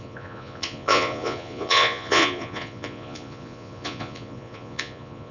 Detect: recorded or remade remade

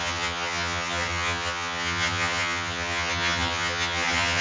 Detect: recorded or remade remade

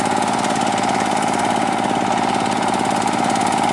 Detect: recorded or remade recorded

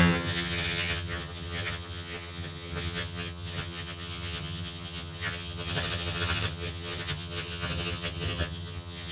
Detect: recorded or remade remade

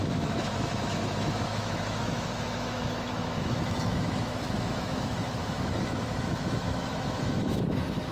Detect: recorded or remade remade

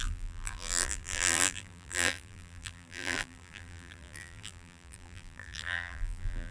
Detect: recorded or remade remade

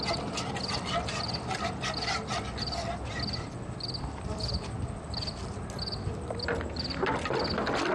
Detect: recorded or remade recorded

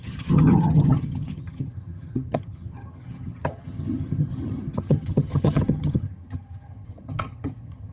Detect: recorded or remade remade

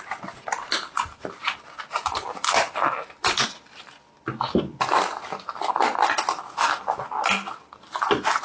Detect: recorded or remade recorded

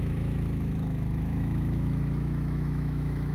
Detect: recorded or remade remade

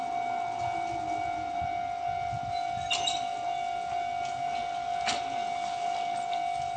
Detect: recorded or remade recorded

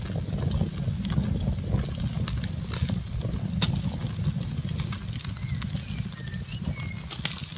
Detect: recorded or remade recorded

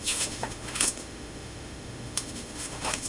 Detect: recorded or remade remade